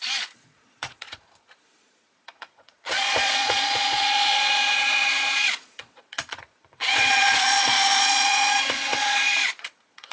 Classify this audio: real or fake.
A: fake